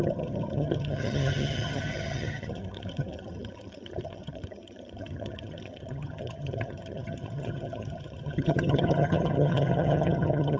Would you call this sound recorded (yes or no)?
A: no